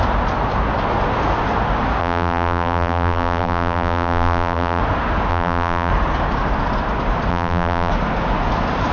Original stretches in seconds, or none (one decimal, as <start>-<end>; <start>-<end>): 0.0-2.0; 4.8-5.3; 5.9-7.3; 7.9-8.9